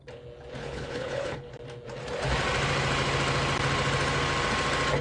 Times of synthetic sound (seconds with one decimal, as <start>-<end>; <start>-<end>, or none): 0.6-1.5